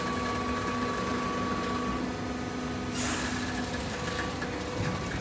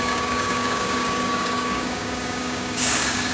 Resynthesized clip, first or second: second